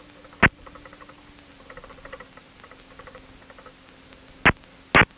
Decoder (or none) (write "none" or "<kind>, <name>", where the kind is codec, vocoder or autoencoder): none